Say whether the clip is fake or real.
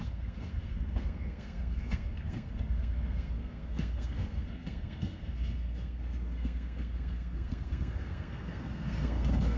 fake